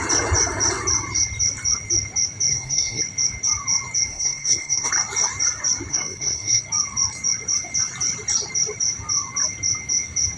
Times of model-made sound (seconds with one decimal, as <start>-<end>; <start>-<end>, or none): 2.5-3.0; 4.1-4.9; 5.9-6.6